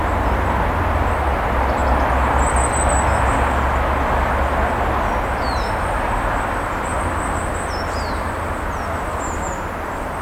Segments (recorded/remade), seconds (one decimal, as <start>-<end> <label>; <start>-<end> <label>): 0.0-10.2 recorded